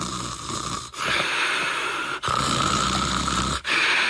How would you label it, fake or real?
fake